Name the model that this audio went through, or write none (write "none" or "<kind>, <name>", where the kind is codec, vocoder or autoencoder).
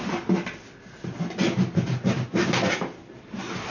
none